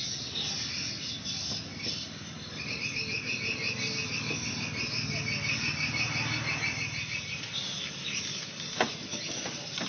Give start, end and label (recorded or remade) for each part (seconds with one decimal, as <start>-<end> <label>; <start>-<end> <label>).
0.0-9.9 recorded